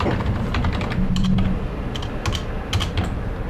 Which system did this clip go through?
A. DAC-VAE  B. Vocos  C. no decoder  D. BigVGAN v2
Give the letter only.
C